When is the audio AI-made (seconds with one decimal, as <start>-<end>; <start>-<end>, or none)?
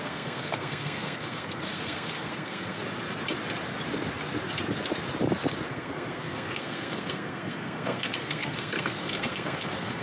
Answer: 0.0-2.8; 5.7-10.0